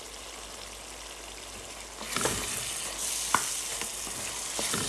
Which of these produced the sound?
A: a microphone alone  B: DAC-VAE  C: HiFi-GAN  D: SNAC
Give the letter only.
A